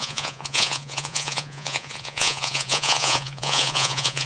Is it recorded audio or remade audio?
remade